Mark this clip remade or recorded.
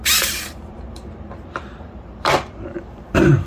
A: remade